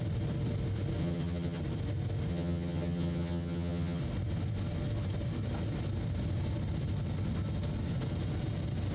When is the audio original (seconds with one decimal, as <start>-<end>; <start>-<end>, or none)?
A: 0.0-1.0; 1.6-2.3; 4.0-8.9